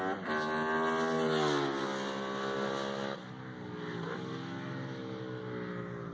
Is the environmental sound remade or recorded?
recorded